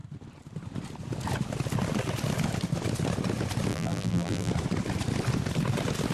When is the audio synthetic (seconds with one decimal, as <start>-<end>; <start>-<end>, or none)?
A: 3.7-4.5